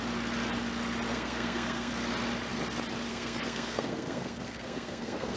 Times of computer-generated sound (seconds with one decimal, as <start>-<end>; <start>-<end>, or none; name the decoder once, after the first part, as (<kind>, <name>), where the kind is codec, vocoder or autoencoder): 1.1-1.9 (codec, SNAC); 3.1-5.4